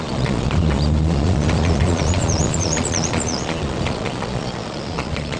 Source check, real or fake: fake